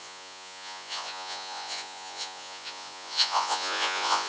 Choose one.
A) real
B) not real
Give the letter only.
B